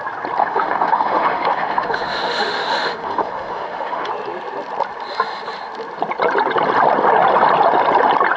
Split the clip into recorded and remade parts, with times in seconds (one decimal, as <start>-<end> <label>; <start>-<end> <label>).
0.0-0.4 recorded; 0.4-4.1 remade; 4.1-8.4 recorded

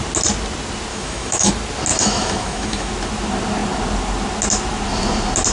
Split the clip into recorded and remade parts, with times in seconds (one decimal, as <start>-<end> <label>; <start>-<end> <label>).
0.0-0.9 recorded; 0.9-1.5 remade; 1.5-1.9 recorded; 1.9-2.9 remade; 2.9-5.5 recorded